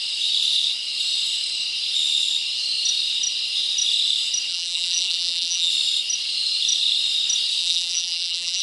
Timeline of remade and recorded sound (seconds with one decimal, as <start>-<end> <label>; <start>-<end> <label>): 0.0-4.5 recorded; 4.5-5.7 remade; 5.7-7.6 recorded; 7.6-8.6 remade